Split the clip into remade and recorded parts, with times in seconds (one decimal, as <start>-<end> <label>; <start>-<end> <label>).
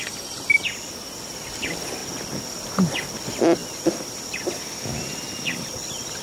0.0-6.2 recorded